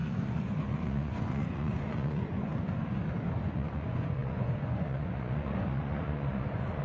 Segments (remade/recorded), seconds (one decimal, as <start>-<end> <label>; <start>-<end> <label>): 0.0-2.5 remade; 2.5-3.4 recorded; 3.4-6.8 remade